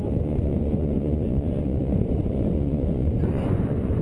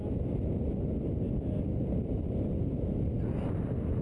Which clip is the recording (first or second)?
second